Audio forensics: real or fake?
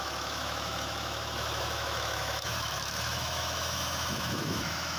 fake